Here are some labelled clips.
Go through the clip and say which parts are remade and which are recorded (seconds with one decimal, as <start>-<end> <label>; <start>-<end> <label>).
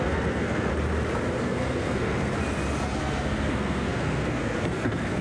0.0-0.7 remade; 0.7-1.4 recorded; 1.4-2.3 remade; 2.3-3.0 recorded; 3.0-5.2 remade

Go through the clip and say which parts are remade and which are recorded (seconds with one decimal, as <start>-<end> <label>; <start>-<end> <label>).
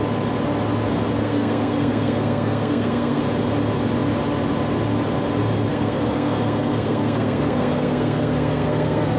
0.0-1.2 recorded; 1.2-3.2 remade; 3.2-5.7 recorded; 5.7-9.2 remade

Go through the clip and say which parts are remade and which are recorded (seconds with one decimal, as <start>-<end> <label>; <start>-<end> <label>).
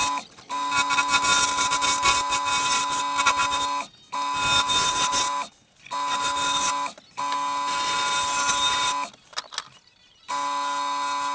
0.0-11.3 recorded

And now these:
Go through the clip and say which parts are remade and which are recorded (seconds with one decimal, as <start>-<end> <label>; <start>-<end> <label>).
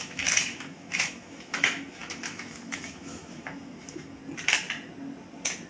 0.0-4.2 remade; 4.2-5.7 recorded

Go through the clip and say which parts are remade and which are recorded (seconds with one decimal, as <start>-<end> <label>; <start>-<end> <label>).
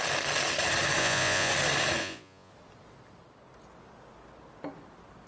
0.0-1.0 recorded; 1.0-1.5 remade; 1.5-2.0 recorded; 2.0-2.5 remade; 2.5-5.3 recorded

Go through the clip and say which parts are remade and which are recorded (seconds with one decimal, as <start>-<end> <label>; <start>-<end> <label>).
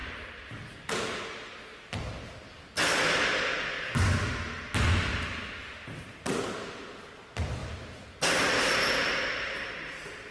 0.0-10.3 recorded